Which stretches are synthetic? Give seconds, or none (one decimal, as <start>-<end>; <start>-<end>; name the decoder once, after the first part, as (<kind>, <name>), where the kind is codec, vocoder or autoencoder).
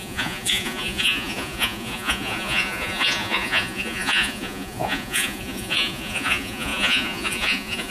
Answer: 0.0-7.9 (vocoder, Vocos)